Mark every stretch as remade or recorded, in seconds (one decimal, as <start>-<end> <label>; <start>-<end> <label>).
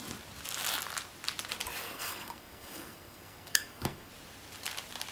0.0-1.8 recorded; 1.8-4.1 remade; 4.1-5.1 recorded